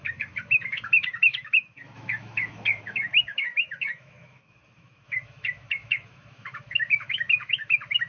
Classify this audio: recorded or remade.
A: remade